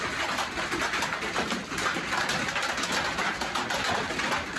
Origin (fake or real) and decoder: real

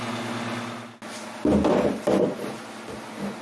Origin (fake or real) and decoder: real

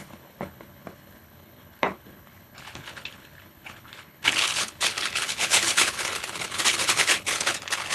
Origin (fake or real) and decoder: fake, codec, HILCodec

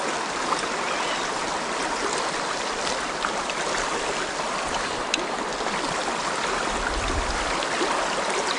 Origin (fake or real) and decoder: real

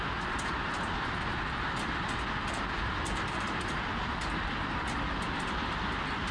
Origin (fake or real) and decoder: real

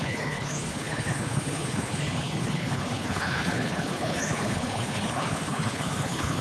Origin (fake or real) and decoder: fake, codec, HILCodec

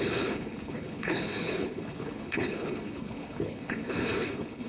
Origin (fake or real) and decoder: fake, codec, HILCodec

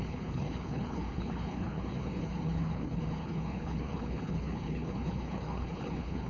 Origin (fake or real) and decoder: fake, codec, HILCodec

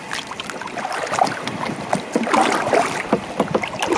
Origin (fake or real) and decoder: real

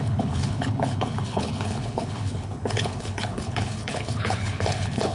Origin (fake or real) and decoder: fake, codec, HILCodec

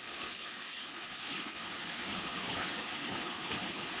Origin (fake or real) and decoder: fake, codec, HILCodec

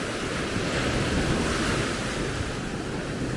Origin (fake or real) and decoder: real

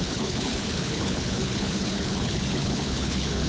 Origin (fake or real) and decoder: fake, codec, HILCodec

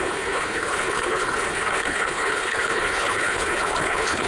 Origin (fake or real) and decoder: fake, codec, HILCodec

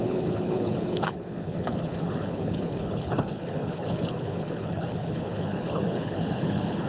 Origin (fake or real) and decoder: fake, codec, HILCodec